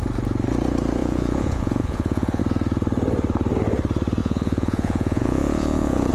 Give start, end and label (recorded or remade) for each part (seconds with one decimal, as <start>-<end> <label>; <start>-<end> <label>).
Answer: 0.0-1.0 recorded; 1.0-2.4 remade; 2.4-4.2 recorded; 4.2-6.1 remade

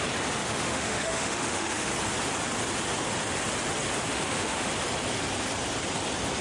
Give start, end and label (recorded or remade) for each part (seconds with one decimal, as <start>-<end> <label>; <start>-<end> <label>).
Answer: 0.0-0.4 recorded; 0.4-1.9 remade; 1.9-4.1 recorded; 4.1-4.7 remade; 4.7-6.4 recorded